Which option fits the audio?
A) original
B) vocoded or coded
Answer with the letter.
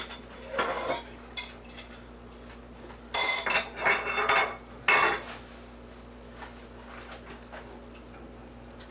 A